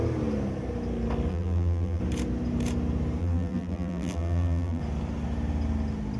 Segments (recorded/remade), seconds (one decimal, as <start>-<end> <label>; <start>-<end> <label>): 0.0-1.3 recorded; 1.3-2.0 remade; 2.0-3.2 recorded; 3.2-4.8 remade; 4.8-6.2 recorded